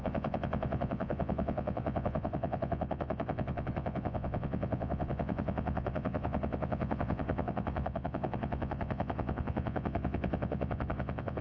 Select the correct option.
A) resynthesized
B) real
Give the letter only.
A